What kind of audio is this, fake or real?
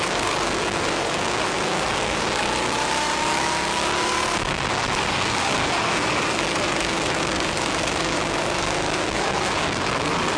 fake